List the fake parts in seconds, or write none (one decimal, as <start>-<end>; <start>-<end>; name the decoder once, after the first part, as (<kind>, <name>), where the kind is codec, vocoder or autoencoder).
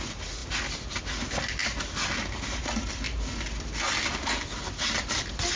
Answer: none